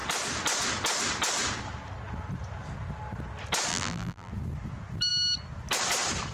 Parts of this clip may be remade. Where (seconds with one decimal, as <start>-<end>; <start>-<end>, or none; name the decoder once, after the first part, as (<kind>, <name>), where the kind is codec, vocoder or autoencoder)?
3.7-4.3 (vocoder, BigVGAN v2)